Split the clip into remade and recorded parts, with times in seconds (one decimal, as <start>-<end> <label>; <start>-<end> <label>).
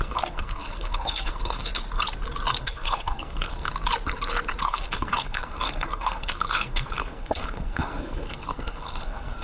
0.0-1.7 remade; 1.7-2.6 recorded; 2.6-3.7 remade; 3.7-4.6 recorded; 4.6-9.4 remade